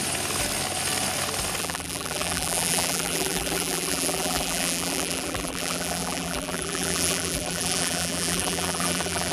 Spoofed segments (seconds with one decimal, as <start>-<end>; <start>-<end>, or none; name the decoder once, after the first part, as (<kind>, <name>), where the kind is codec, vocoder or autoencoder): 1.6-9.3 (vocoder, BigVGAN v2)